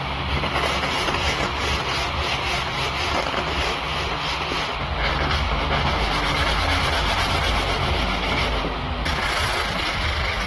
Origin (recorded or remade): recorded